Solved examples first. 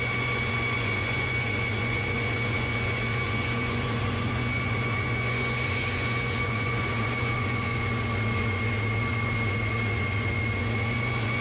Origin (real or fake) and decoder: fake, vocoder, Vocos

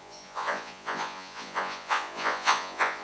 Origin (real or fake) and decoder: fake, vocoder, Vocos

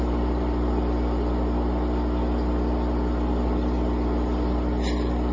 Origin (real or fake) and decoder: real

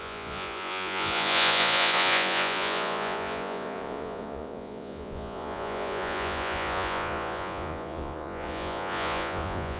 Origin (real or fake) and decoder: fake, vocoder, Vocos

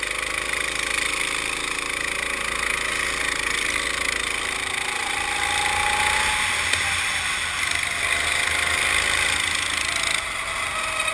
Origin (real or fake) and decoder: real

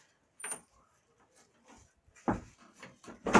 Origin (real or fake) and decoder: real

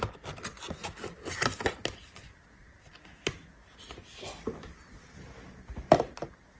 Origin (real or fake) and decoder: real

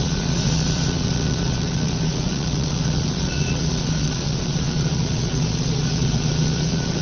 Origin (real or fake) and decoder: fake, vocoder, Vocos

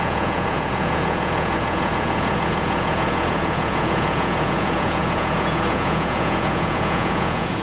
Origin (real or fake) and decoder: fake, vocoder, Vocos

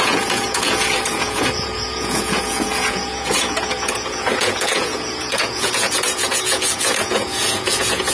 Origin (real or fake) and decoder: fake, vocoder, Vocos